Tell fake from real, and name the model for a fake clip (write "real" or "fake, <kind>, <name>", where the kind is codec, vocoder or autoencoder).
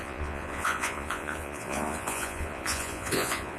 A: fake, vocoder, Vocos